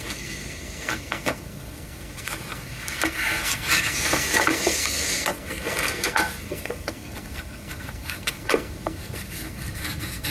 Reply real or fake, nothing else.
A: fake